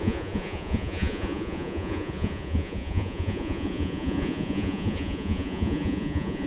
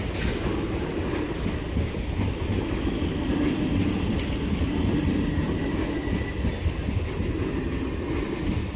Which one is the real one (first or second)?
second